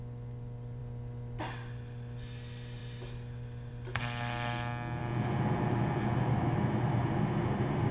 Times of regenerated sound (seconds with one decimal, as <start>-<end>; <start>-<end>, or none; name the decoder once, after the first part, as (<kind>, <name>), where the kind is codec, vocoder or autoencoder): none